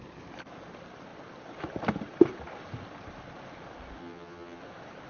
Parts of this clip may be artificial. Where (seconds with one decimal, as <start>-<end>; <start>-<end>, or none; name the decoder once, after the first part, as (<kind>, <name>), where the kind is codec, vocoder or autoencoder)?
4.0-4.6 (vocoder, HiFi-GAN)